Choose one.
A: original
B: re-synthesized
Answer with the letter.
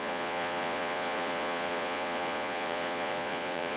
B